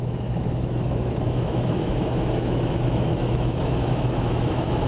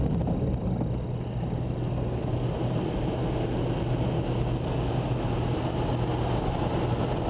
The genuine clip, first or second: second